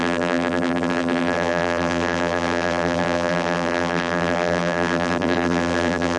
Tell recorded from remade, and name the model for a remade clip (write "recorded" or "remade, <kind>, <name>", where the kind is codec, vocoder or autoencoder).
remade, vocoder, BigVGAN v2